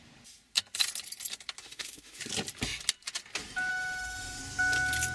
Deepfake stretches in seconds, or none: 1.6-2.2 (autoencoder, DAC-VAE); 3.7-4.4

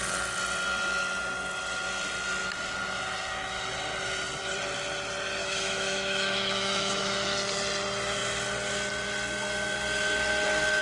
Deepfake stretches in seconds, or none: 5.4-7.1 (autoencoder, DAC-VAE)